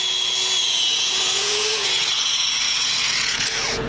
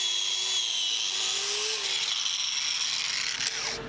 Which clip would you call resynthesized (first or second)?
first